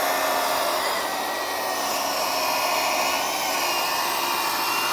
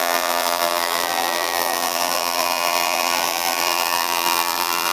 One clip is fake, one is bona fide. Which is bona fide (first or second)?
first